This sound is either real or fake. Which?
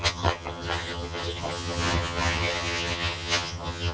fake